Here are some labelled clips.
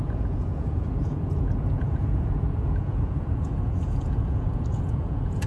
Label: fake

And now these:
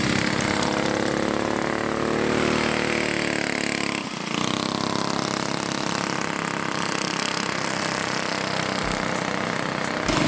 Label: real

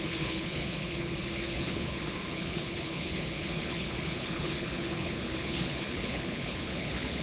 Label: fake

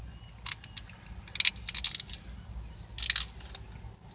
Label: real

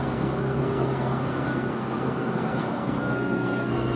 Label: fake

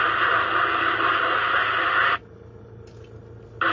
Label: real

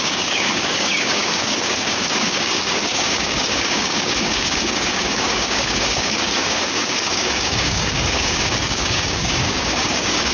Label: fake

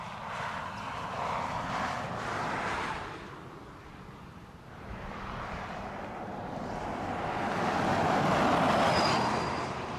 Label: real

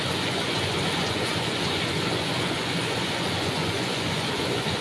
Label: fake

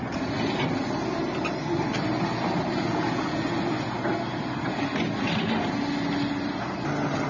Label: real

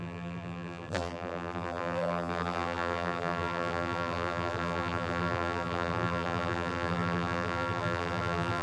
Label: fake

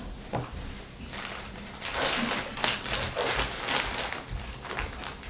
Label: real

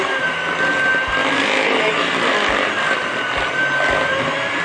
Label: real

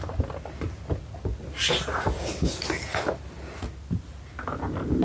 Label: real